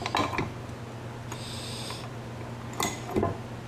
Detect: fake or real real